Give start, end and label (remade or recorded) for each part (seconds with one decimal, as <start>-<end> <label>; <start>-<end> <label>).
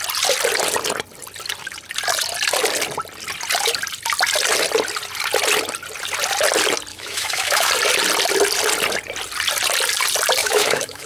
0.0-6.9 recorded; 6.9-7.7 remade; 7.7-10.4 recorded; 10.4-11.1 remade